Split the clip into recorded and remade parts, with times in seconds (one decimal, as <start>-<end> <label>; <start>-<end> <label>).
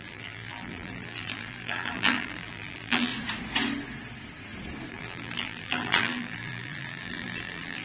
0.0-3.1 remade; 3.1-4.9 recorded; 4.9-7.8 remade